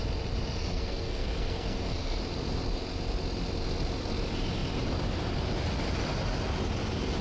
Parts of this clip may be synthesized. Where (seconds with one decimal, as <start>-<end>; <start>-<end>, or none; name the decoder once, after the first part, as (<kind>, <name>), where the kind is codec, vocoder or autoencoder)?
0.6-2.2 (codec, SNAC)